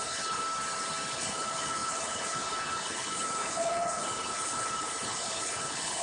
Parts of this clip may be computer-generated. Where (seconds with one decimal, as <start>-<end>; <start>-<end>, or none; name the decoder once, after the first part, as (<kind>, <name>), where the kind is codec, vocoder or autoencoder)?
0.0-0.4 (codec, HILCodec); 1.1-6.0